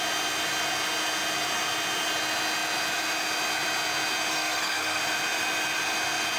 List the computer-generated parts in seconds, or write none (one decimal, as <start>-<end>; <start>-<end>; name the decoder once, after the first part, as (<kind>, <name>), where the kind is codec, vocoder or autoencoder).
4.3-5.0 (codec, SNAC)

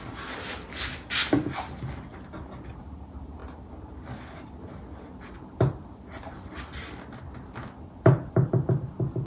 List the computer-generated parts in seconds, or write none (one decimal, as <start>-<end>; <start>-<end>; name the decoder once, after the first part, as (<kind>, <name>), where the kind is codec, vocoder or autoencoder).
none

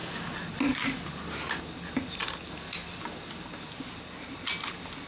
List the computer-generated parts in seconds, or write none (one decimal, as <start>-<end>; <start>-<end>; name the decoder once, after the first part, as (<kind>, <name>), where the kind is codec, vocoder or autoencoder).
none